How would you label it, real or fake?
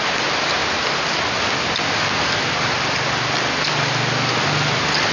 real